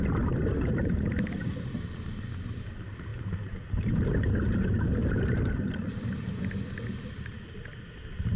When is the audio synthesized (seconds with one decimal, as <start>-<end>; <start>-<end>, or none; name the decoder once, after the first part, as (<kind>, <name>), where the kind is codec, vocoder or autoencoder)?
none